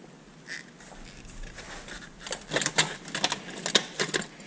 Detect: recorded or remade recorded